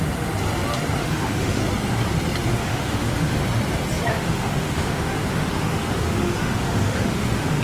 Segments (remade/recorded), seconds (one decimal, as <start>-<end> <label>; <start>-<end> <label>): 0.0-1.0 recorded; 1.0-1.6 remade; 1.6-2.5 recorded; 2.5-3.4 remade; 3.4-4.1 recorded; 4.1-7.6 remade